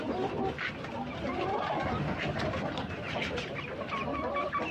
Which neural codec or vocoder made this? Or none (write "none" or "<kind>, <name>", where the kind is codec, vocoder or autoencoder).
none